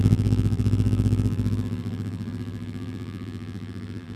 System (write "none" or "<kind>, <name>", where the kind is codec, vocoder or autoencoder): vocoder, BigVGAN v2